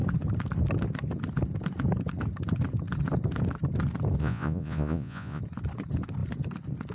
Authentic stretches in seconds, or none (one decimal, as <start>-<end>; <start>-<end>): 0.0-4.2; 5.4-6.9